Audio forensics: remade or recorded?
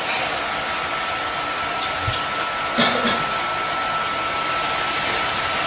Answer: recorded